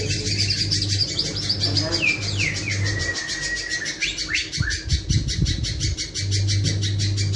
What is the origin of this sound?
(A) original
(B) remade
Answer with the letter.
A